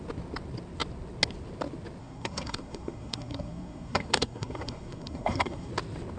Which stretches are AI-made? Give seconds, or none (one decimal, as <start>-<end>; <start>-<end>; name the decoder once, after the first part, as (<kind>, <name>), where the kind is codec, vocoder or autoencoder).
2.0-5.7 (codec, SNAC)